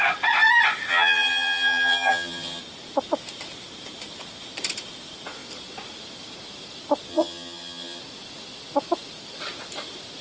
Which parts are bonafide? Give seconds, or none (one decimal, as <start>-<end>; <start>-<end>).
0.0-0.9; 2.6-7.1; 8.0-10.2